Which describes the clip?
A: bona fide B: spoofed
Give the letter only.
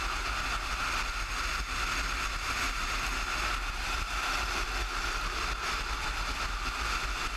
A